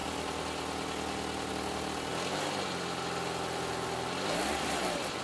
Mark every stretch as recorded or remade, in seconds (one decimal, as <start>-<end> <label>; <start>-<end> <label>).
0.0-5.2 recorded